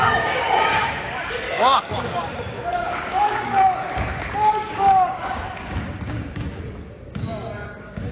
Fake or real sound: fake